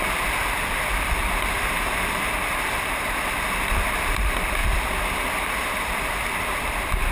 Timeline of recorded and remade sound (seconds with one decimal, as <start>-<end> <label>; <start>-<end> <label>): 0.0-4.6 remade; 4.6-5.9 recorded; 5.9-7.1 remade